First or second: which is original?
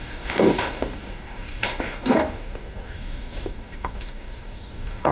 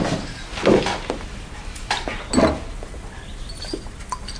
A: second